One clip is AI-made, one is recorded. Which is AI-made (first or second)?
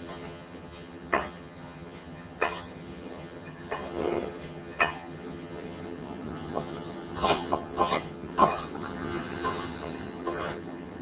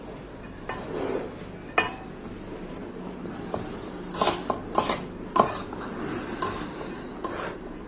first